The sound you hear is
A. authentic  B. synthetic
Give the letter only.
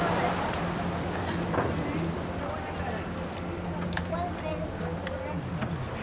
A